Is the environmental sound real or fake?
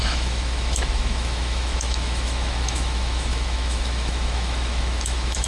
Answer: fake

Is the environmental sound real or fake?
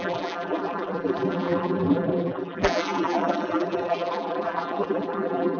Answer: fake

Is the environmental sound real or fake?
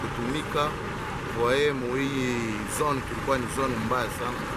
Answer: real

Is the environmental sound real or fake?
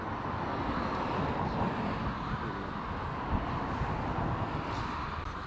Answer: real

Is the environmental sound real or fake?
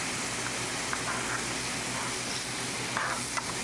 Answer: real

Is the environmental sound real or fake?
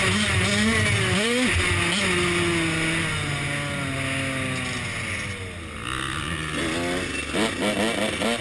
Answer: real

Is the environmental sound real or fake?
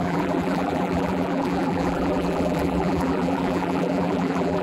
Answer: fake